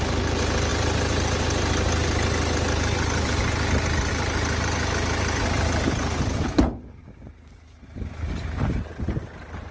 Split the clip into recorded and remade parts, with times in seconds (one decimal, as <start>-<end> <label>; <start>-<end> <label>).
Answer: 0.0-9.7 recorded